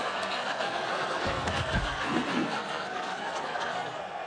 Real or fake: fake